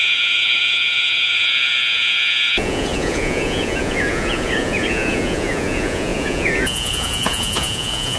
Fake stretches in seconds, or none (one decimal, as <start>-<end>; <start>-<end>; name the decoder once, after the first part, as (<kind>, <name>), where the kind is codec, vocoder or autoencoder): 0.0-8.2 (vocoder, Vocos)